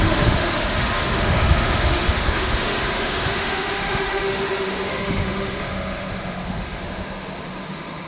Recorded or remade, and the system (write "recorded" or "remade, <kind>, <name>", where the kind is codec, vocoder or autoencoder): remade, autoencoder, DAC-VAE